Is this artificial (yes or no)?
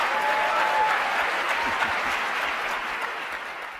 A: no